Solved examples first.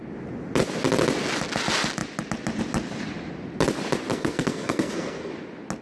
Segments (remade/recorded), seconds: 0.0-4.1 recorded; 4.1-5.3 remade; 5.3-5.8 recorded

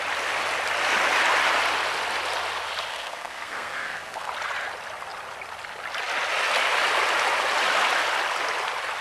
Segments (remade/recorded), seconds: 0.0-2.9 recorded; 2.9-4.3 remade; 4.3-9.0 recorded

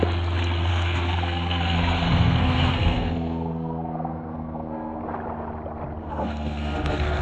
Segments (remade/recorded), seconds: 0.0-0.7 recorded; 0.7-5.0 remade; 5.0-6.0 recorded; 6.0-7.2 remade

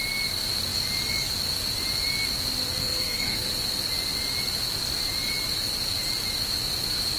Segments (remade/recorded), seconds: 0.0-2.8 recorded; 2.8-3.5 remade; 3.5-7.2 recorded

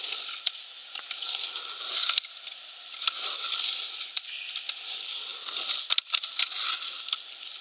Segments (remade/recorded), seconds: 0.0-7.6 recorded

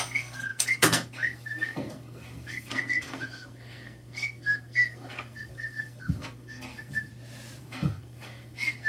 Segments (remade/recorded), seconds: 0.0-7.1 remade; 7.1-7.6 recorded; 7.6-8.9 remade